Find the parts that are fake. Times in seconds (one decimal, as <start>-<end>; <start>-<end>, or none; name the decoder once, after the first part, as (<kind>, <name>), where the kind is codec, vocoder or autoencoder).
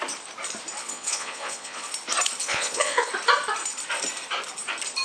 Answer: 0.8-1.9 (vocoder, Vocos); 2.4-3.1